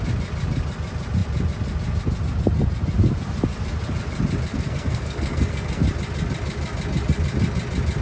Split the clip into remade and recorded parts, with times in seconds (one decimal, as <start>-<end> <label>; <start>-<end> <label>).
0.0-4.5 recorded; 4.5-5.8 remade; 5.8-8.0 recorded